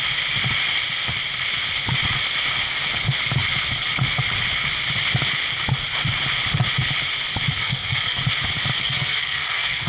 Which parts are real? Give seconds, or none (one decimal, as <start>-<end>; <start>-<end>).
0.0-7.6; 8.2-8.8